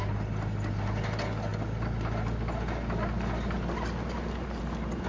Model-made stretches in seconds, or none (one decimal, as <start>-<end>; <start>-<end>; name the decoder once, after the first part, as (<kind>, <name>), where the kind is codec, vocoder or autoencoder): none